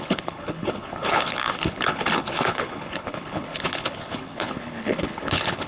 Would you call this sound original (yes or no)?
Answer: no